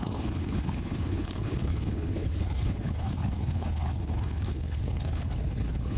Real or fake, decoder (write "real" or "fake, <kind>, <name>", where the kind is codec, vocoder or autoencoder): fake, codec, HILCodec